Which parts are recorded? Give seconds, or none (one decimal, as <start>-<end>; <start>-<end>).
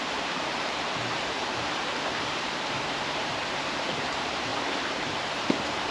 4.5-5.2